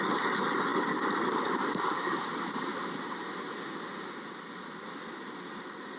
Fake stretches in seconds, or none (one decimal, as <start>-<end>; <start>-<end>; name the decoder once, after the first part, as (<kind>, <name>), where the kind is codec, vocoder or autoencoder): none